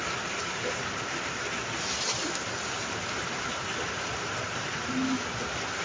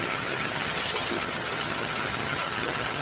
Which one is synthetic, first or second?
second